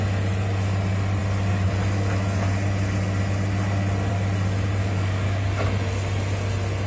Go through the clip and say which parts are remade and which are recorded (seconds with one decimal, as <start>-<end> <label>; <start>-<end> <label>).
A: 0.0-4.8 recorded; 4.8-5.5 remade; 5.5-6.9 recorded